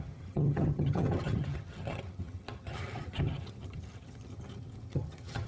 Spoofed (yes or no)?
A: yes